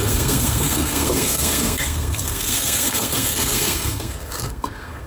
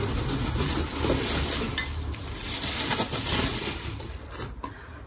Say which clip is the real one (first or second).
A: second